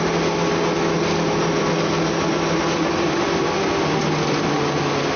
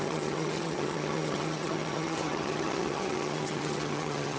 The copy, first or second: second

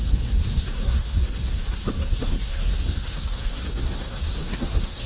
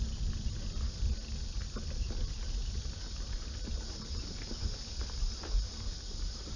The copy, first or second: first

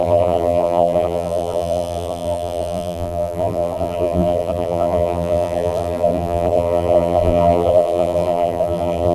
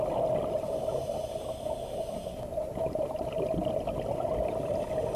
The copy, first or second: first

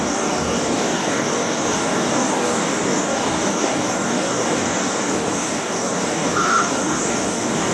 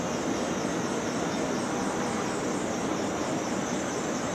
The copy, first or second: first